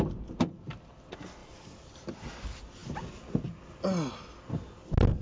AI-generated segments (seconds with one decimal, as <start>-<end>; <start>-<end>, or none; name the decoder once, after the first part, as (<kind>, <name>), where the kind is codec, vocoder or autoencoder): none

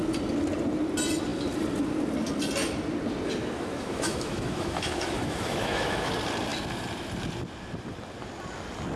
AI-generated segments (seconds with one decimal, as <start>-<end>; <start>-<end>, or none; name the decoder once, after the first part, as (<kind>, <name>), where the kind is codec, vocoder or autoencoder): 3.4-6.1 (autoencoder, DAC-VAE)